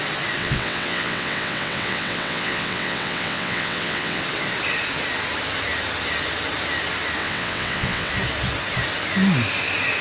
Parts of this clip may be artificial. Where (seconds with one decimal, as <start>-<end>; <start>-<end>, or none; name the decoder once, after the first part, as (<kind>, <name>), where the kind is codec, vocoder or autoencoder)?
0.4-4.2 (vocoder, WaveNeXt); 7.2-8.1